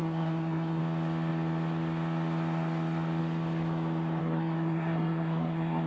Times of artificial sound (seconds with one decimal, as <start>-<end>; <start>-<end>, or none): 0.0-0.8; 4.2-5.9